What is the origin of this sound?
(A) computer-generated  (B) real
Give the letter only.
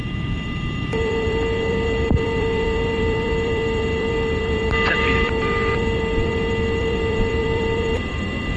A